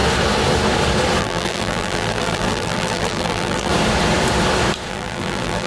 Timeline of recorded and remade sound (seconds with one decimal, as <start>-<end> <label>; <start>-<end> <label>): 0.0-1.2 recorded; 1.2-3.7 remade; 3.7-4.9 recorded; 4.9-5.7 remade